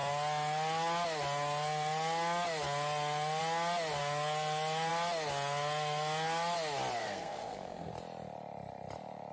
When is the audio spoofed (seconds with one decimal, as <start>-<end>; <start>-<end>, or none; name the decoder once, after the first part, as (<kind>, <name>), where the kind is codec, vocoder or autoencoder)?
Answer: 7.0-7.9 (codec, SNAC)

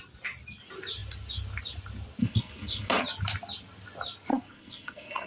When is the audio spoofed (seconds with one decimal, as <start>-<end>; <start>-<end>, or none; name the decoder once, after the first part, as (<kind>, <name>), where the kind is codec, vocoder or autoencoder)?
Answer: 2.2-2.9 (codec, SNAC); 4.3-5.3

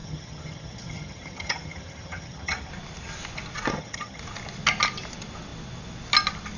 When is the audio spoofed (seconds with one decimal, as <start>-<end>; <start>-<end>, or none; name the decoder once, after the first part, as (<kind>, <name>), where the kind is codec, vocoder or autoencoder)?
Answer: 0.0-2.7 (vocoder, HiFi-GAN); 3.7-4.2

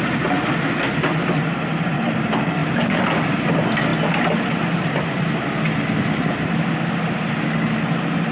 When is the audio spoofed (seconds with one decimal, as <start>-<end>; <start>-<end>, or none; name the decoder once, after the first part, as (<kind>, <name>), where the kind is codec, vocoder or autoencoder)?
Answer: 1.4-2.2 (vocoder, BigVGAN v2); 2.6-3.5